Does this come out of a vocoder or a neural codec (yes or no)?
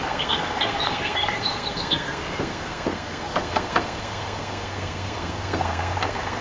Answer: yes